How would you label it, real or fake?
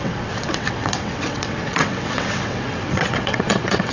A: fake